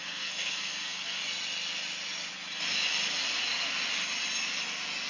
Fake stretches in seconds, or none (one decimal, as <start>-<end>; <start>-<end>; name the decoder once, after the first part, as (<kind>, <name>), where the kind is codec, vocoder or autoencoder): 0.0-1.2 (codec, SNAC)